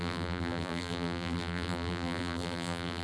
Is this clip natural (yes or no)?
no